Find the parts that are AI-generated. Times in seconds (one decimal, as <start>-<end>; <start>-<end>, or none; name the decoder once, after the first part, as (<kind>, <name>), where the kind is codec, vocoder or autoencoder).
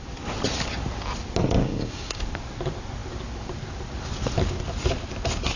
1.6-2.2 (codec, DAC)